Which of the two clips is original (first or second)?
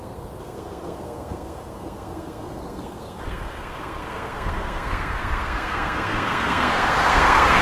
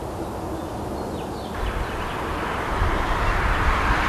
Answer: second